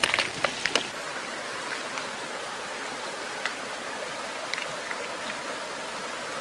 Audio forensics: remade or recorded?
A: recorded